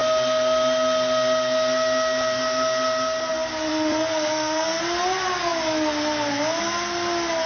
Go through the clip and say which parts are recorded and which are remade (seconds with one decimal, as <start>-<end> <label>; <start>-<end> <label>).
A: 0.0-3.7 recorded; 3.7-4.8 remade; 4.8-7.5 recorded